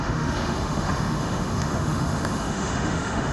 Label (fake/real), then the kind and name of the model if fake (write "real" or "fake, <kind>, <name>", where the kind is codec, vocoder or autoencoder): fake, autoencoder, DAC-VAE